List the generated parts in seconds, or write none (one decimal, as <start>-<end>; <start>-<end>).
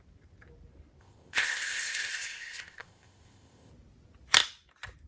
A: 1.0-3.7